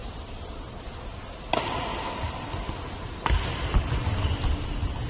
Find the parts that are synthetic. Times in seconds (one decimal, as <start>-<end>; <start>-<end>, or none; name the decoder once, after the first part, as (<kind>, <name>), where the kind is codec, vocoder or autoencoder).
none